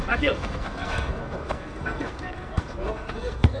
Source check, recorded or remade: remade